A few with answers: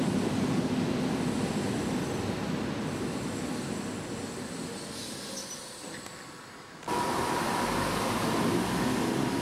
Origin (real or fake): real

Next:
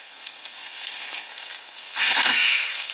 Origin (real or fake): fake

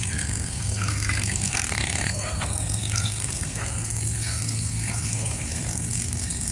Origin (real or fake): fake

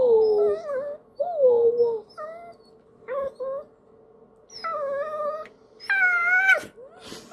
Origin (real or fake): real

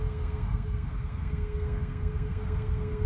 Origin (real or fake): fake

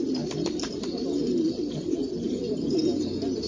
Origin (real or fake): real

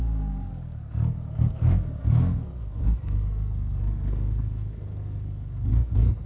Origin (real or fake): fake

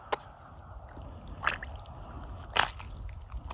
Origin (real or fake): real